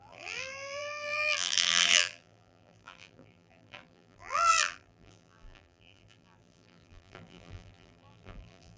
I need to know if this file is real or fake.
fake